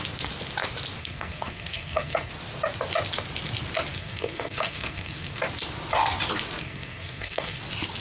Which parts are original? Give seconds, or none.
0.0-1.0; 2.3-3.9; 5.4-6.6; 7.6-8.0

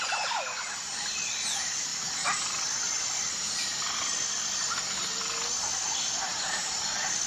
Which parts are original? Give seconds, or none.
1.9-3.0

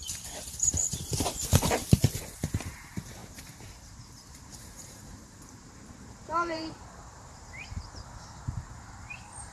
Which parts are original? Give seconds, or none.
none

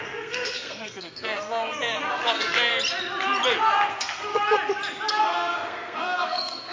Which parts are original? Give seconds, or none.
2.7-3.9; 4.3-5.1

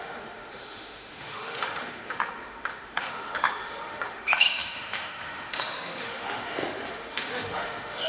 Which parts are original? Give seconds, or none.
none

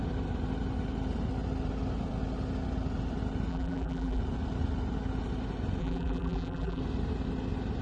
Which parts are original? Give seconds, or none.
0.0-3.5; 4.2-5.8; 6.8-7.8

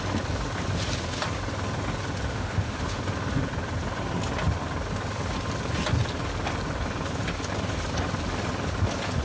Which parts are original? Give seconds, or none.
0.0-2.3; 3.0-9.2